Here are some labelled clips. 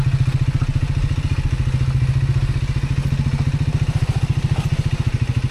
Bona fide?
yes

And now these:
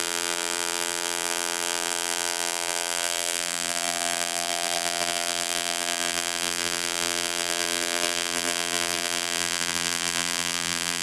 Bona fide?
no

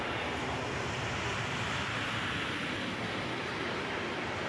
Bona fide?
no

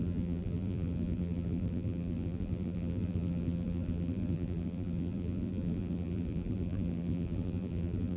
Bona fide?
no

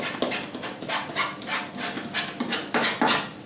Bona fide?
yes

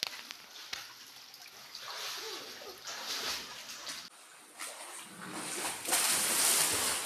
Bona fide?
yes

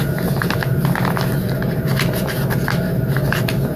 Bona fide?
yes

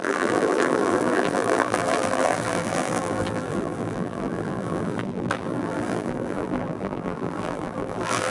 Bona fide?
no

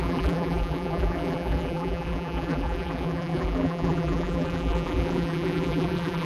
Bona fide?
no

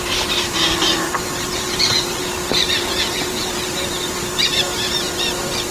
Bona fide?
no